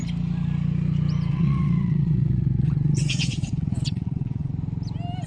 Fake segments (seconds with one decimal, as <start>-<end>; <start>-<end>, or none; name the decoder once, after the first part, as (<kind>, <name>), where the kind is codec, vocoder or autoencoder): 1.3-4.5 (vocoder, WaveNeXt)